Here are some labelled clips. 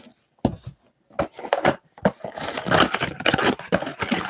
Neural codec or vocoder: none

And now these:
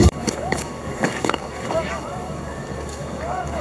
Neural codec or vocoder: codec, DAC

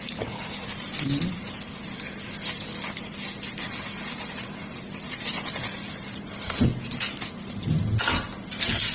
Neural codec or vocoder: none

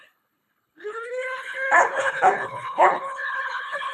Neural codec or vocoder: codec, HILCodec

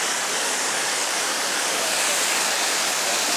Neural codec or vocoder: codec, DAC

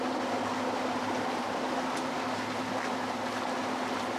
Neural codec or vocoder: none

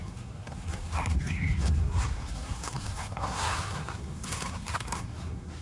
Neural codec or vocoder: codec, SNAC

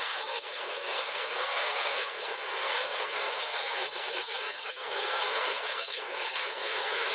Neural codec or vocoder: codec, SNAC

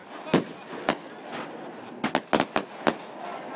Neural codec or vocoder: none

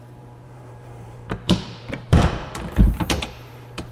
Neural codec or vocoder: vocoder, BigVGAN v2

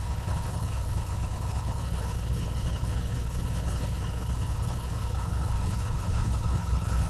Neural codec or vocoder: codec, HILCodec